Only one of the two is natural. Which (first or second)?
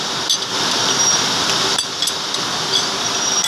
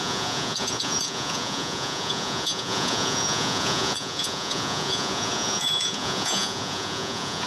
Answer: first